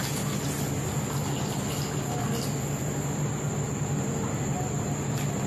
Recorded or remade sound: recorded